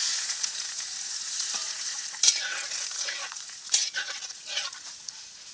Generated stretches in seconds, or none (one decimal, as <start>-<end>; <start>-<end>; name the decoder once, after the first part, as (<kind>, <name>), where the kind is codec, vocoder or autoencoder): 0.0-5.5 (vocoder, Vocos)